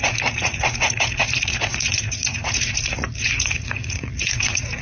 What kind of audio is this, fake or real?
fake